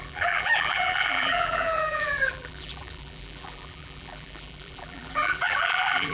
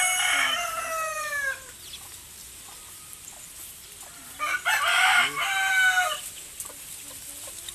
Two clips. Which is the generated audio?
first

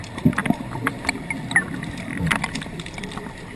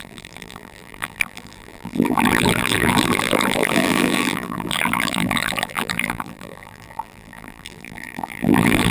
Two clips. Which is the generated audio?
second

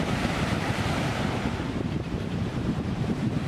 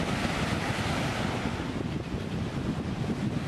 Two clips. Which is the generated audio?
first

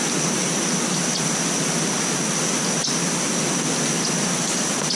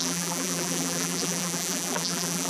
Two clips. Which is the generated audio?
second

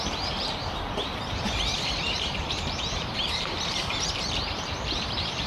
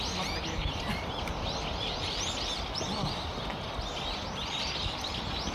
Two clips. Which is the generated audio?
first